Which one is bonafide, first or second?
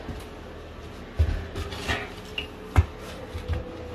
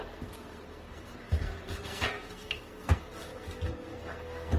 first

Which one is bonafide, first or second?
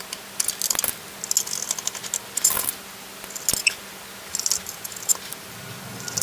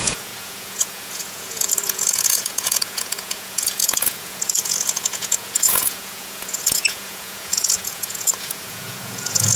first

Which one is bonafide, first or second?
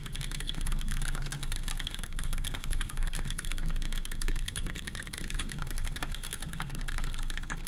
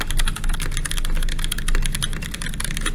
second